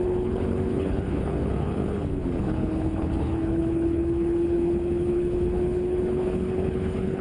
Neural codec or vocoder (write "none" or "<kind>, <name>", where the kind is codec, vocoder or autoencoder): codec, HILCodec